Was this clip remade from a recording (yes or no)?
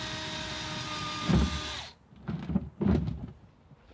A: no